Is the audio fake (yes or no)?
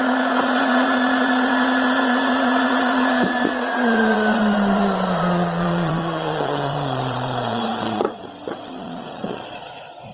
yes